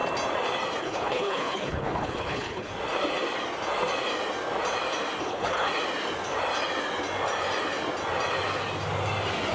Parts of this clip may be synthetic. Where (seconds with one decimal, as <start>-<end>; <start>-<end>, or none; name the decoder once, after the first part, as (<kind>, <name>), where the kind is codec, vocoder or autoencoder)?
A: 0.8-2.7 (codec, HILCodec); 5.2-5.7